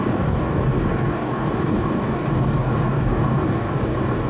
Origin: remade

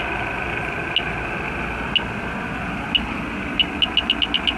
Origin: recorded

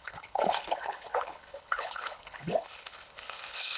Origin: remade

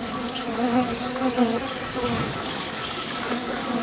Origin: remade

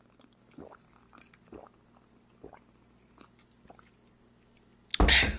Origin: recorded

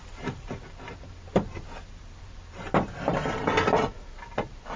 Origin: remade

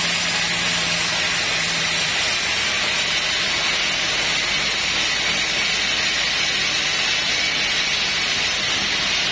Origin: recorded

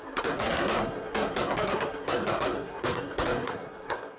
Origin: remade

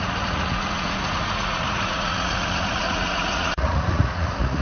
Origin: remade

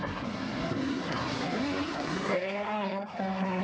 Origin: remade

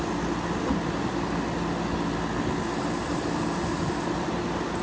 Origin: recorded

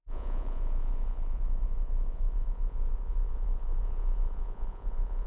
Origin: remade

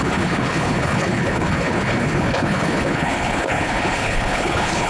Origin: remade